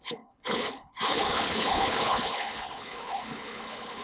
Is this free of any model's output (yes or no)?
no